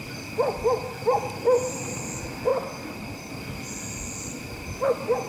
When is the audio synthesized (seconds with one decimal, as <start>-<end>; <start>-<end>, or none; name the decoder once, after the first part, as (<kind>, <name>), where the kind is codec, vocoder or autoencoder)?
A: 0.8-1.8 (vocoder, BigVGAN v2)